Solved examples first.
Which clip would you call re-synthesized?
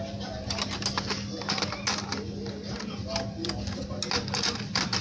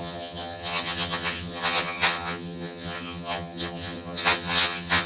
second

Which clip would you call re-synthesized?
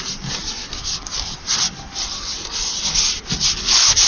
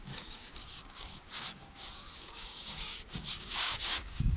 second